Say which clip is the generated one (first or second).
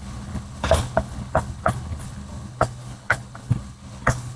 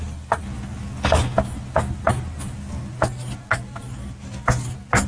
first